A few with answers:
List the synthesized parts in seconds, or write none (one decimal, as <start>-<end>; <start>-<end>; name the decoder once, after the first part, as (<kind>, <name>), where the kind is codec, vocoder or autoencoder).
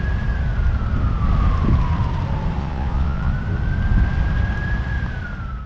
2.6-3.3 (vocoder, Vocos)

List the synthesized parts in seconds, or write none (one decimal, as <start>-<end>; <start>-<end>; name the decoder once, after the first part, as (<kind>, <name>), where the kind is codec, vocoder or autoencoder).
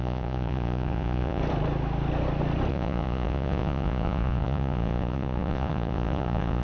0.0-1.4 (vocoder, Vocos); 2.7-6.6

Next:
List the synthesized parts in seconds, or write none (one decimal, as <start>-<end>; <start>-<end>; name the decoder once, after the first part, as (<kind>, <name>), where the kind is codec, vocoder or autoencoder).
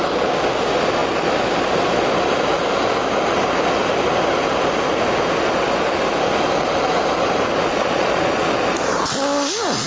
7.7-8.5 (vocoder, Vocos)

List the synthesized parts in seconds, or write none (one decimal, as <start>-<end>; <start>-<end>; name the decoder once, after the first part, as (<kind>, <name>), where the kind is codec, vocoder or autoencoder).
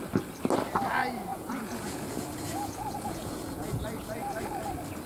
1.3-4.4 (vocoder, Vocos)